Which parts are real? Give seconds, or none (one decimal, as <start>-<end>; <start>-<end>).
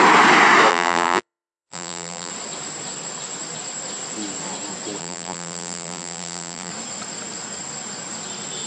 0.0-0.7; 2.3-5.0; 6.7-8.7